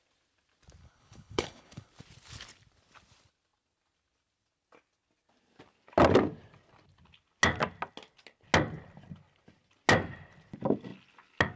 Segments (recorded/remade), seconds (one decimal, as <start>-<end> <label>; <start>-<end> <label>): 0.0-0.8 recorded; 0.8-1.9 remade; 1.9-11.6 recorded